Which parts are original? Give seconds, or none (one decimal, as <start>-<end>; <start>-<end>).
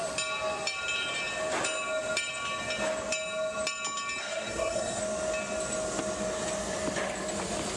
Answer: 0.0-4.2; 5.0-7.8